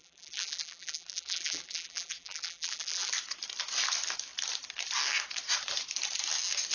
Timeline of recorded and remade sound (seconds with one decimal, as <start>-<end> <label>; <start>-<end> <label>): 0.0-3.1 remade; 3.1-6.7 recorded